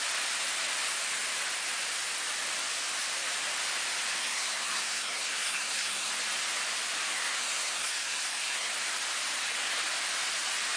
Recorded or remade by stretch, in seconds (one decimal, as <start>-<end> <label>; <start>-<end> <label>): 0.0-4.2 recorded; 4.2-6.1 remade; 6.1-7.1 recorded; 7.1-8.7 remade; 8.7-10.8 recorded

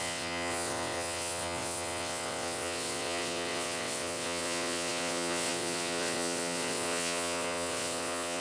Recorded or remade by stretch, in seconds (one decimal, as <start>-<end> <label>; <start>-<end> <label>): 0.0-8.4 remade

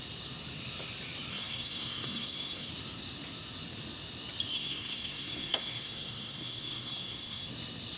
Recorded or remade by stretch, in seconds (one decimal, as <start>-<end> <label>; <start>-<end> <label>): 0.0-1.3 recorded; 1.3-2.7 remade; 2.7-4.5 recorded; 4.5-7.5 remade; 7.5-8.0 recorded

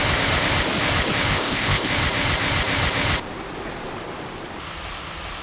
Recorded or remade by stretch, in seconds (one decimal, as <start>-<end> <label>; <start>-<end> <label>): 0.0-1.3 recorded; 1.3-1.9 remade; 1.9-5.4 recorded